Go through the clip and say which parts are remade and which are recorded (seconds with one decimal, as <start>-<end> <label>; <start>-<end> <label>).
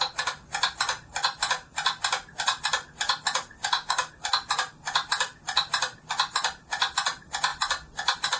0.0-3.6 recorded; 3.6-4.1 remade; 4.1-8.4 recorded